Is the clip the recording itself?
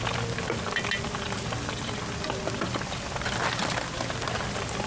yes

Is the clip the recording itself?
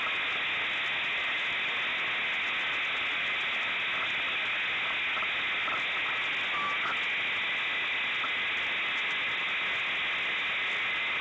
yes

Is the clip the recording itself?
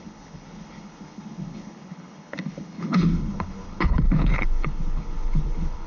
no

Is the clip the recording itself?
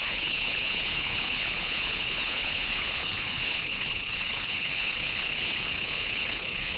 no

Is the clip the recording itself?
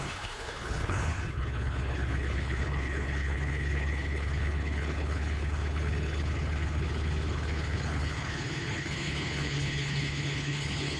no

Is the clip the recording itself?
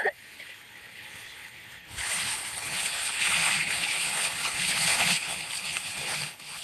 no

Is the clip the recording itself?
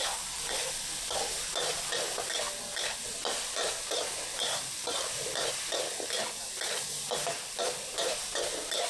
yes